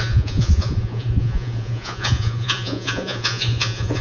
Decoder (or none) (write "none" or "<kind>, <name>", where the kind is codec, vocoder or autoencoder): vocoder, Vocos